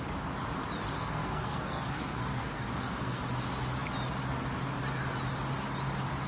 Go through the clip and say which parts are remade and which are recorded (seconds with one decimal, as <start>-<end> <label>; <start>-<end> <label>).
0.0-1.0 recorded; 1.0-3.2 remade; 3.2-6.3 recorded